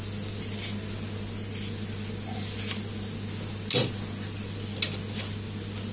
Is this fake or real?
real